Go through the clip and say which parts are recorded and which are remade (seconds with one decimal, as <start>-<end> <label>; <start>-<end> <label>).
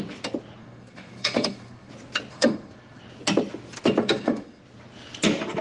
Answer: 0.0-0.6 recorded; 0.6-1.9 remade; 1.9-2.3 recorded; 2.3-3.0 remade; 3.0-4.0 recorded; 4.0-4.6 remade; 4.6-5.6 recorded